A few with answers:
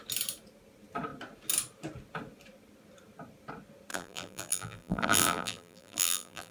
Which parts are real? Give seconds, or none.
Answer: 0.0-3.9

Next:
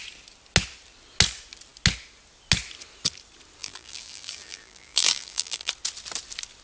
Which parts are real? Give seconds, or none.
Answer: 0.0-3.6; 5.7-6.6

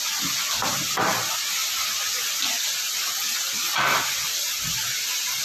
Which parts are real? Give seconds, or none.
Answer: 0.0-5.4

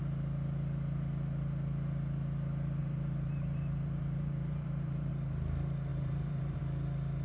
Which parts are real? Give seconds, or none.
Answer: 0.0-2.8; 5.1-5.9; 6.6-7.2

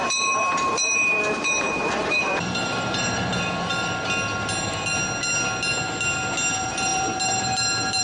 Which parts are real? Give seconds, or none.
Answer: 3.7-6.5

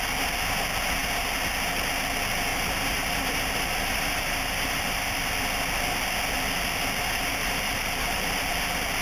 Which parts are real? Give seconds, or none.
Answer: 0.0-2.5; 5.2-7.4; 8.5-9.0